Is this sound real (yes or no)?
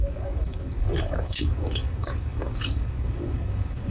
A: no